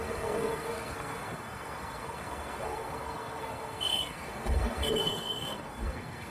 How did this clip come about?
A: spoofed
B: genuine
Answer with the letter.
A